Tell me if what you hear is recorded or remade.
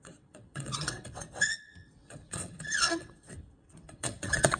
remade